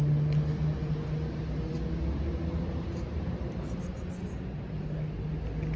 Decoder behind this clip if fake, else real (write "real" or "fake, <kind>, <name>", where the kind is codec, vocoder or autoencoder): real